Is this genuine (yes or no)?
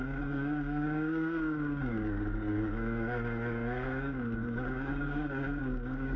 no